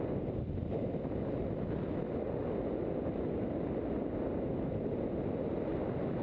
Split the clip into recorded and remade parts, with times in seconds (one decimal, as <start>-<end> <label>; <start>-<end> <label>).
0.0-6.2 recorded